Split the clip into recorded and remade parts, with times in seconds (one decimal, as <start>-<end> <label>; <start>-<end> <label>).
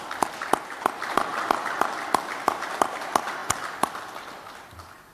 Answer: 0.0-5.1 recorded